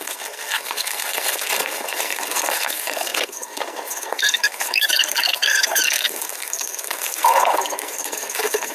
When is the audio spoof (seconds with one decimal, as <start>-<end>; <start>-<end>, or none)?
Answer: 0.0-8.7